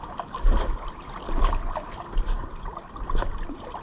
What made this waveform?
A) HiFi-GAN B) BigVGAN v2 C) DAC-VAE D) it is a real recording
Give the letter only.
D